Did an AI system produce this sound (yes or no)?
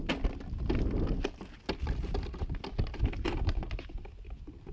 no